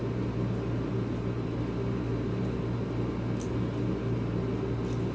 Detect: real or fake real